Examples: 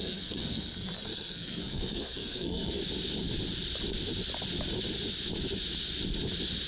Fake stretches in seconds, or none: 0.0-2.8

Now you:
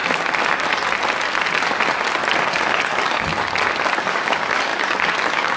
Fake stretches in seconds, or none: 2.8-3.3; 4.0-5.6

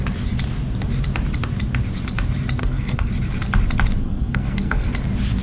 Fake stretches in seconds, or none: 2.6-3.1; 4.0-4.9

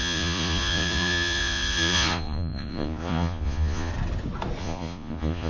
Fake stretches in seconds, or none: 0.0-3.9; 4.6-5.5

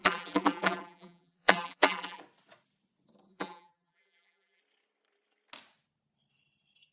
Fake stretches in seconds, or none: 0.0-2.2; 3.3-4.6

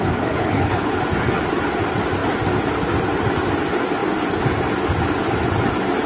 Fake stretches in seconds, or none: 0.4-1.0

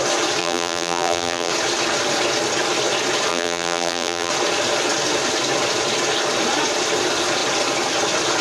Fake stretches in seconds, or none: 0.4-1.5; 3.3-4.3

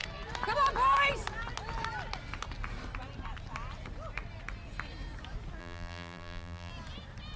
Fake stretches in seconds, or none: 5.6-6.7